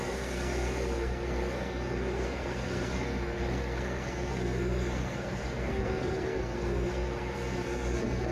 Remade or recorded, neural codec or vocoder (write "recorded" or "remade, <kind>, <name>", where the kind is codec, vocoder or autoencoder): remade, codec, SNAC